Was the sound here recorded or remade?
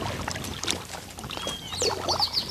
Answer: recorded